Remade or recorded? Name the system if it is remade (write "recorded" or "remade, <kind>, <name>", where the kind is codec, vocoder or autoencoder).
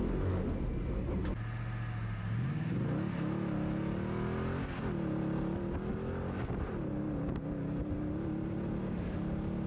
recorded